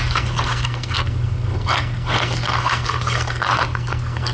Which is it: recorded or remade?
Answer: remade